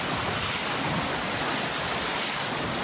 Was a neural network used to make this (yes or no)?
no